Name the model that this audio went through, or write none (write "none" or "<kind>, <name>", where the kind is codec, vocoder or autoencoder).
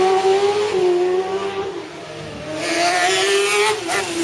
none